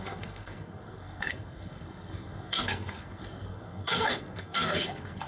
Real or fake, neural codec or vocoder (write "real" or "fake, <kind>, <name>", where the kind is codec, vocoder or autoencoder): fake, codec, SNAC